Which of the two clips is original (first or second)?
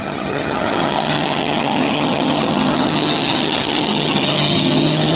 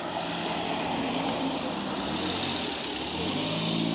second